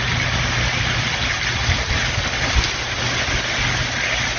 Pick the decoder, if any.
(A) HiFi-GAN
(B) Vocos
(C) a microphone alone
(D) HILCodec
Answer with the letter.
C